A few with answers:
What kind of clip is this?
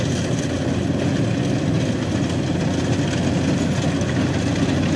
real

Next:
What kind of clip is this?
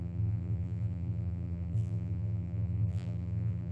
fake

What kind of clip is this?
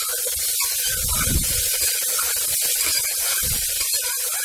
real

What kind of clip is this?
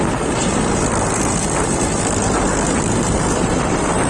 real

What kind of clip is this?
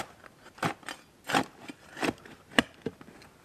real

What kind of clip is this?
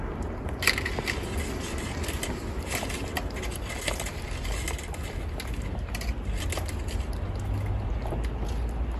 real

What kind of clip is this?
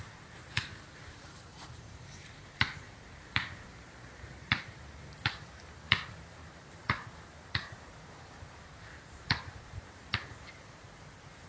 fake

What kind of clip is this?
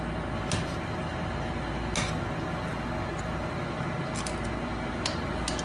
real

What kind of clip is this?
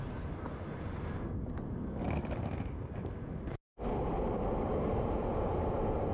real